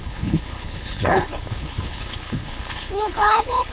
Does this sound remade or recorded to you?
remade